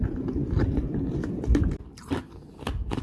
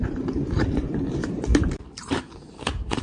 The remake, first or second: second